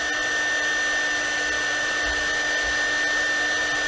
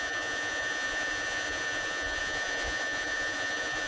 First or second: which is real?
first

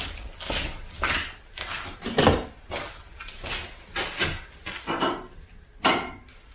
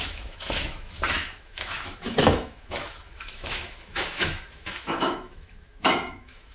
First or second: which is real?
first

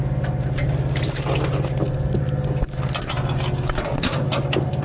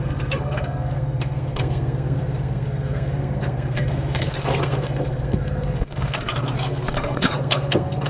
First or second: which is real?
first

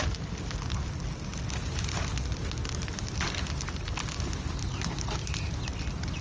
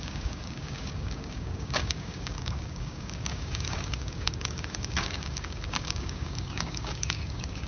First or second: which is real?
first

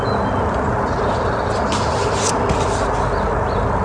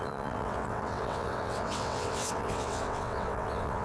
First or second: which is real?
first